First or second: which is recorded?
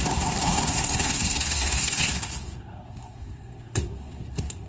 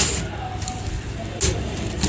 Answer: second